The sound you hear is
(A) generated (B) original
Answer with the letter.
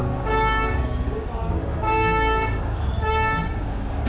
A